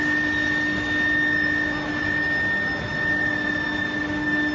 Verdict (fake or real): real